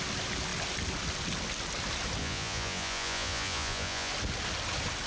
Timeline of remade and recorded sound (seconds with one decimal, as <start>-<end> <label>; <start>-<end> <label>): 0.0-2.2 recorded; 2.2-4.1 remade; 4.1-5.1 recorded

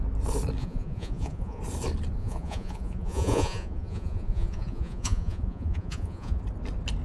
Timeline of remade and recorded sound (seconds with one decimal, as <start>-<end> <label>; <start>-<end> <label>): 0.0-0.6 recorded; 0.6-1.6 remade; 1.6-2.2 recorded; 2.2-6.4 remade; 6.4-7.0 recorded